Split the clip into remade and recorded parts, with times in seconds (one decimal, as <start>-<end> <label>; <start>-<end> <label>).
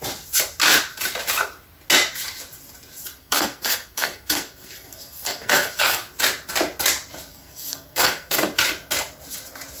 0.0-3.2 recorded; 3.2-6.1 remade; 6.1-7.3 recorded; 7.3-8.4 remade; 8.4-9.8 recorded